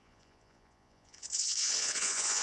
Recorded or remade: remade